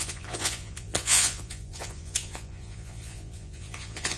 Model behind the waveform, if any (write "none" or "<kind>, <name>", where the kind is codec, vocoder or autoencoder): vocoder, Vocos